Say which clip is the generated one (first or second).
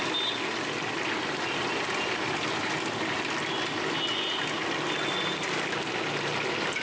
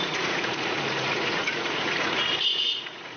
second